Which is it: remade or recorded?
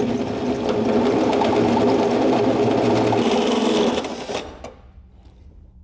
recorded